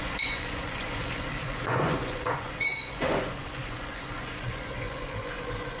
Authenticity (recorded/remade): remade